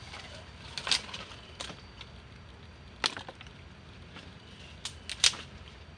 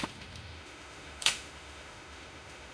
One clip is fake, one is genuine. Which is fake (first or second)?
second